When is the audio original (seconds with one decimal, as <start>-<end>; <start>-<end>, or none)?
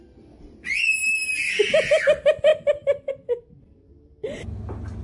0.0-5.0